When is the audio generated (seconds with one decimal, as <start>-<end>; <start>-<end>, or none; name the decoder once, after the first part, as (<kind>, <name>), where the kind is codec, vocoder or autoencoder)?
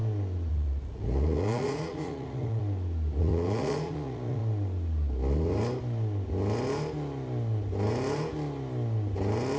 0.5-2.6 (vocoder, Vocos); 3.2-4.4